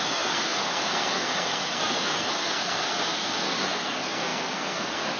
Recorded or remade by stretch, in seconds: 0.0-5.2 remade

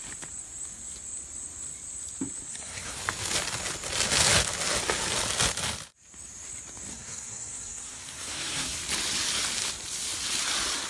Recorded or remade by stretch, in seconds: 0.0-2.5 recorded; 2.5-3.0 remade; 3.0-6.9 recorded; 6.9-8.8 remade; 8.8-10.9 recorded

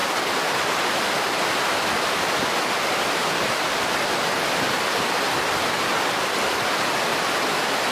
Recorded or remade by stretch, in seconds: 0.0-7.9 recorded

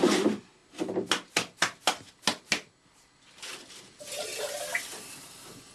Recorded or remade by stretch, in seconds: 0.0-5.7 recorded

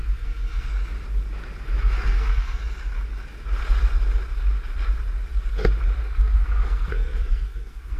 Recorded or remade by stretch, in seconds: 0.0-0.7 remade; 0.7-1.8 recorded; 1.8-2.6 remade; 2.6-6.0 recorded; 6.0-8.0 remade